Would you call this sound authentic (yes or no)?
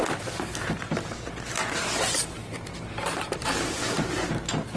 yes